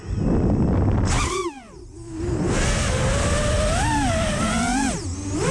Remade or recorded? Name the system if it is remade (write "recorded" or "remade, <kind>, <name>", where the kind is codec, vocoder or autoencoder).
recorded